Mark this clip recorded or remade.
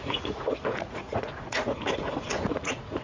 remade